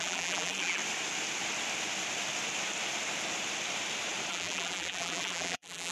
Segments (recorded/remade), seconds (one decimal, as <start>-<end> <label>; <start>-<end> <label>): 0.0-0.8 remade; 0.8-4.3 recorded; 4.3-5.9 remade